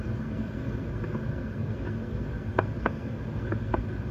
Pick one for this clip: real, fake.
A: fake